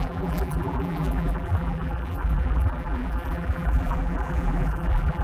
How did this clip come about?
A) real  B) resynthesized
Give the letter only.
B